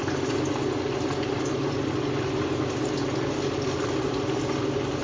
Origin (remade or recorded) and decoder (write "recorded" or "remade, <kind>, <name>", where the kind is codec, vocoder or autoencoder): recorded